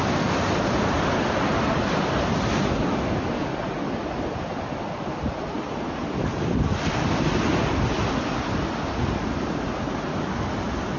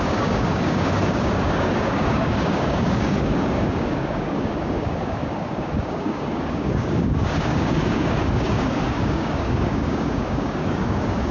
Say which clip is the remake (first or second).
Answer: second